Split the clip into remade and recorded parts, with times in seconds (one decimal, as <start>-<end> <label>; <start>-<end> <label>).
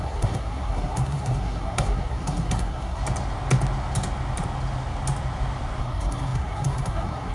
0.0-3.0 remade; 3.0-5.8 recorded; 5.8-7.3 remade